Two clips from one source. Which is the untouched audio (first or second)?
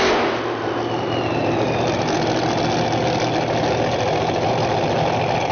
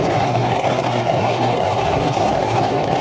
first